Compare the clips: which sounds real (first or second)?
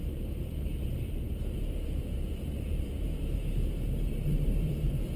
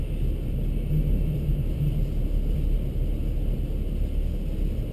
second